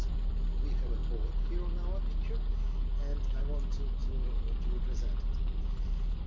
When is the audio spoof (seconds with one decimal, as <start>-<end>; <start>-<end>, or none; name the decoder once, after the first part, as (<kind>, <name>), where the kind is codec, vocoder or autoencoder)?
0.0-1.0 (vocoder, BigVGAN v2); 3.4-6.3